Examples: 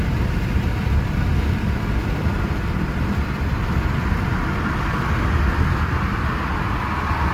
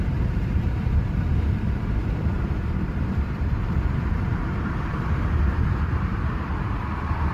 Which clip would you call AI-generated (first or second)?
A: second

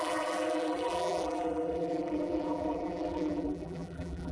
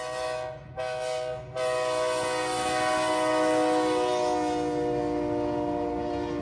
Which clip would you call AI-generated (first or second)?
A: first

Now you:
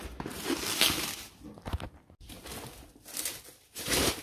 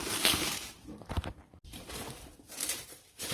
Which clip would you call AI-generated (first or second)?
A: second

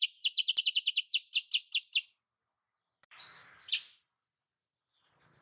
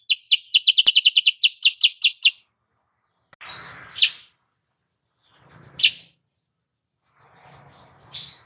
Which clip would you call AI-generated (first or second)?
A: first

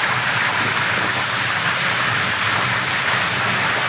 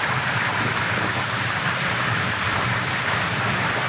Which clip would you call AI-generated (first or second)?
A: second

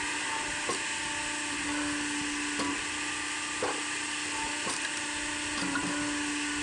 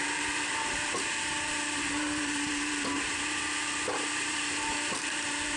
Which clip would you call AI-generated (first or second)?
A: second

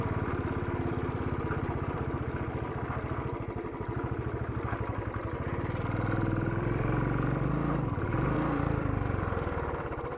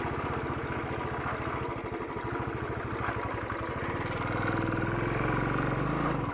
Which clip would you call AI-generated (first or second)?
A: first